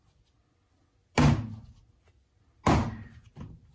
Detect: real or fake real